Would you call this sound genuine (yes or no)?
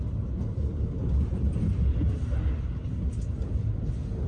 yes